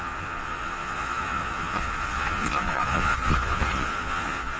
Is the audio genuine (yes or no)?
no